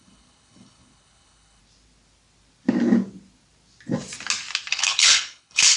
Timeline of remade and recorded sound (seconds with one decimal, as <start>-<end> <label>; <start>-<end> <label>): 0.0-1.6 remade; 1.6-4.7 recorded; 4.7-5.8 remade